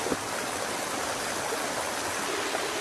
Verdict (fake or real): real